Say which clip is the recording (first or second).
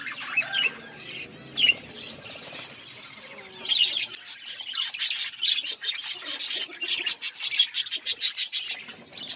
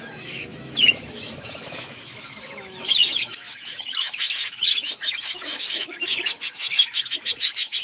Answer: first